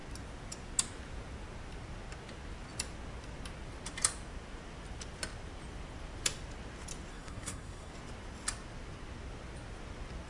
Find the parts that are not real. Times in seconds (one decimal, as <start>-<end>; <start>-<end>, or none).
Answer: 7.1-7.9